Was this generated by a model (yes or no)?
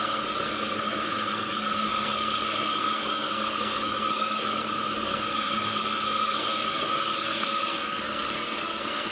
yes